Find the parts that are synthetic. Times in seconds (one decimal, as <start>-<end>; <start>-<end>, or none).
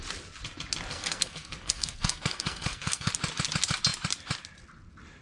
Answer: 0.9-3.1